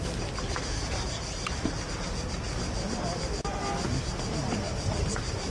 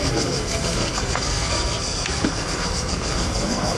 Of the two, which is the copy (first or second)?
second